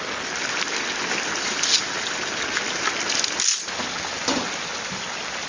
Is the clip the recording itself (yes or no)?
yes